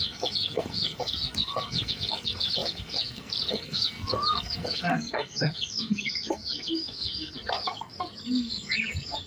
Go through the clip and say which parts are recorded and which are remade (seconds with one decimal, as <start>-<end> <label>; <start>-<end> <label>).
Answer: 0.0-9.3 remade